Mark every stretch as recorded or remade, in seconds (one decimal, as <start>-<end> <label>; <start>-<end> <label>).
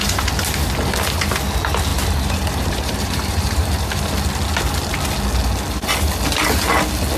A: 0.0-1.9 recorded; 1.9-4.1 remade; 4.1-7.2 recorded